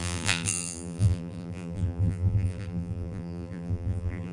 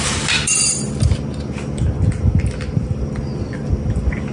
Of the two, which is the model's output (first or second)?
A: first